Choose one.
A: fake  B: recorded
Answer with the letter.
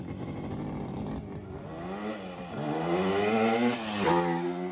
B